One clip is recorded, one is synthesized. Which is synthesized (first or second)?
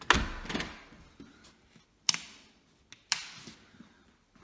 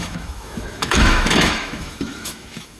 second